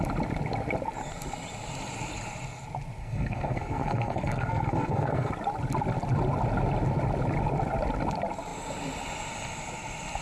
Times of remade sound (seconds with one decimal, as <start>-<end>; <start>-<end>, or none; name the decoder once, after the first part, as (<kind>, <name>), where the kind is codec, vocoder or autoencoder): 3.0-5.3 (codec, SNAC)

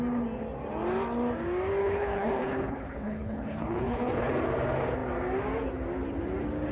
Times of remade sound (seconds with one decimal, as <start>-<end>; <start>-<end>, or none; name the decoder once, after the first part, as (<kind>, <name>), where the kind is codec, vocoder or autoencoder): 1.8-4.3 (codec, HILCodec)